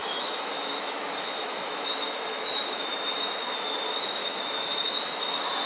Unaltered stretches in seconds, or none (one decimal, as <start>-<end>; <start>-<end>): 3.4-4.2; 5.3-5.7